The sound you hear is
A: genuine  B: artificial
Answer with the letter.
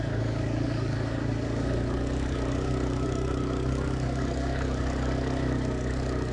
B